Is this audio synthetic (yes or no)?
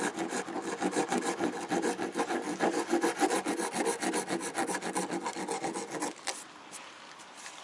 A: no